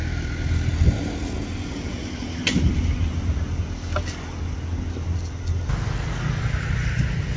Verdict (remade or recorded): recorded